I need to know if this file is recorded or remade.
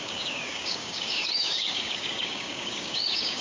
remade